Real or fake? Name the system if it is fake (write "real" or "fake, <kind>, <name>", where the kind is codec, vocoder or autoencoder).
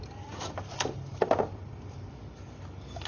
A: real